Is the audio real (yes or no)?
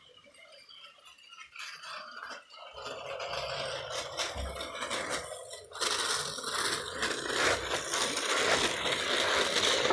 yes